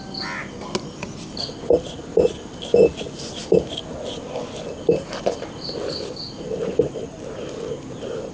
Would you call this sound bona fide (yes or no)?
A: yes